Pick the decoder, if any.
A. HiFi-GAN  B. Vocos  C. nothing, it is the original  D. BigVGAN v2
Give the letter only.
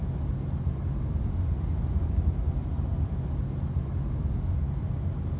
C